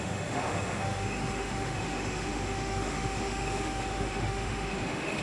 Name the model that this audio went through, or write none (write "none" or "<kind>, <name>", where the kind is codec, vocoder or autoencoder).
autoencoder, DAC-VAE